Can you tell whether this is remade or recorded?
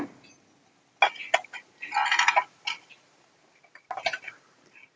recorded